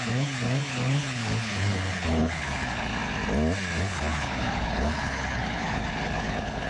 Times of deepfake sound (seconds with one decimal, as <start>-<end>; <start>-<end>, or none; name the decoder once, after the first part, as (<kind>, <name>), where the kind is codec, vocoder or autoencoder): 0.0-2.9 (codec, HILCodec); 3.8-6.7